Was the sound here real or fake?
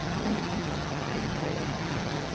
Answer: fake